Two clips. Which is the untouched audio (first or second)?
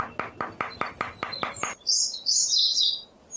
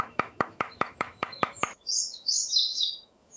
first